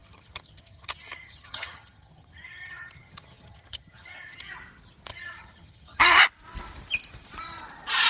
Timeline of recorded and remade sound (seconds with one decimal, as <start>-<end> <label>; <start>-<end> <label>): 0.0-4.5 remade; 4.5-5.1 recorded; 5.1-6.2 remade; 6.2-8.1 recorded

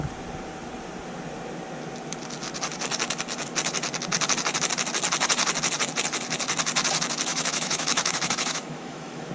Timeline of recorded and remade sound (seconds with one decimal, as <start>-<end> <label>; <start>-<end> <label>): 0.0-7.3 recorded; 7.3-9.3 remade

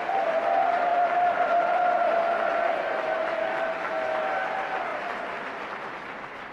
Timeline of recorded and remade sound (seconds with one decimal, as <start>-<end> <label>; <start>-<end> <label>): 0.0-0.9 recorded; 0.9-3.7 remade; 3.7-6.5 recorded

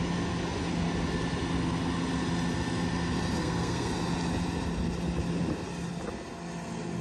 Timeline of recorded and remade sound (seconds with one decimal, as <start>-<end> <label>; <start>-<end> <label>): 0.0-3.4 recorded; 3.4-3.9 remade; 3.9-7.0 recorded